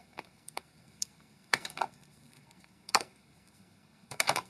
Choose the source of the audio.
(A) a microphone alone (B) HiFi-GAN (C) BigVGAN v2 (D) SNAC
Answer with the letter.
D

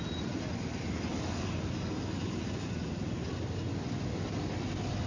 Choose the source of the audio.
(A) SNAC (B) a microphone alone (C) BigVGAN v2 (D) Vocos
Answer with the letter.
B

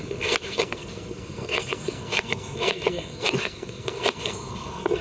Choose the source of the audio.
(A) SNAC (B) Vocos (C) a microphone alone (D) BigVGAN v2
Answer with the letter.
A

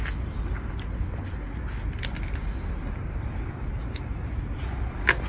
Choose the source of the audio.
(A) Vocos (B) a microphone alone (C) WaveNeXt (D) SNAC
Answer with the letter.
B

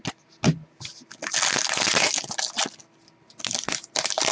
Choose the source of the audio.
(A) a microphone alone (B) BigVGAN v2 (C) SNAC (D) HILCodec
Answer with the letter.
A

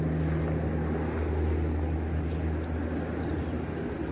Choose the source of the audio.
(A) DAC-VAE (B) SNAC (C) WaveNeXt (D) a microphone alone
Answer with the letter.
D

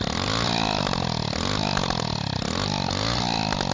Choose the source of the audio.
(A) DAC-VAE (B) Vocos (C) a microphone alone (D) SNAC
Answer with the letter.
C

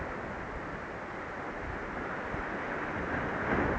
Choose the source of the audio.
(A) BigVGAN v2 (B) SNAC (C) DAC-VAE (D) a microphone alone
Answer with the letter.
D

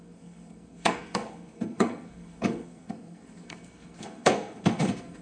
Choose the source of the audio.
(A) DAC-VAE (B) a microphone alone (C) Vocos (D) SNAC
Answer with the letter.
D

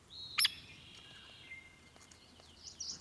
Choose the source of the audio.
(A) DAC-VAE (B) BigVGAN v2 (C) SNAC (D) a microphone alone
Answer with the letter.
D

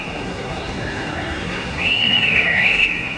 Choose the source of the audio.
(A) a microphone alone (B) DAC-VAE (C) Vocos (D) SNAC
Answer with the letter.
D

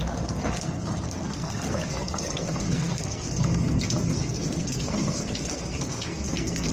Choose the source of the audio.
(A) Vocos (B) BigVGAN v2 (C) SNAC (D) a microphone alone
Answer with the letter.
C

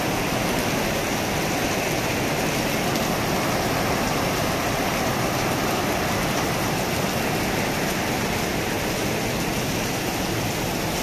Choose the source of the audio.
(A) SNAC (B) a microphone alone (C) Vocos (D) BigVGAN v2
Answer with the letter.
B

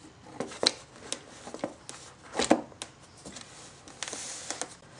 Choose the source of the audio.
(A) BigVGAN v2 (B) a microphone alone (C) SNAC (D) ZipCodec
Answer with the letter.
B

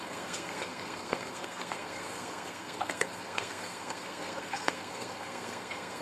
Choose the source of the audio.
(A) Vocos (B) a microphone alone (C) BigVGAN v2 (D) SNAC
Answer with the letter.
D